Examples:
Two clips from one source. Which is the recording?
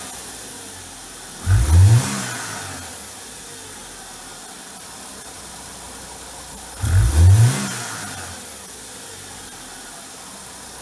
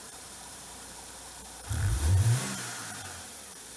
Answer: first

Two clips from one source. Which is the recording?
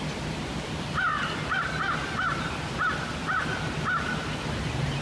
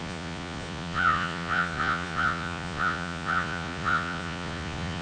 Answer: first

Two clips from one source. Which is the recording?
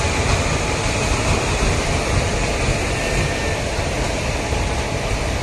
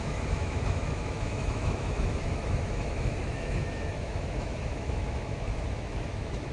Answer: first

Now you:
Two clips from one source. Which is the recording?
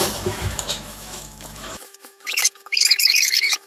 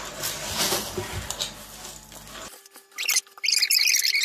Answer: second